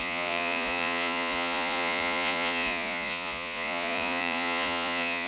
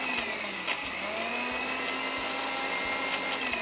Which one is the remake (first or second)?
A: first